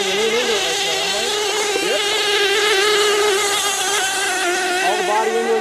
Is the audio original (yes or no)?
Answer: yes